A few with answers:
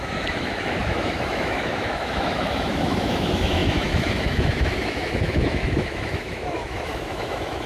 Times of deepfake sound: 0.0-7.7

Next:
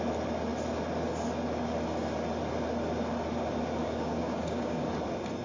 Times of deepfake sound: 3.8-4.9

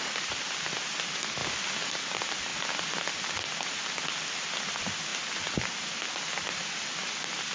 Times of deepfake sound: none

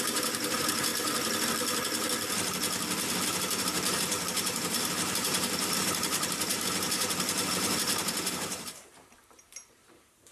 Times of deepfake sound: 0.0-0.9; 3.6-10.3